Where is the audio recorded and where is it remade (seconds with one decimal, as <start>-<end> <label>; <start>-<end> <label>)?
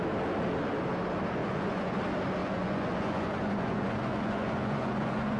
0.0-1.4 recorded; 1.4-2.0 remade; 2.0-2.4 recorded; 2.4-5.4 remade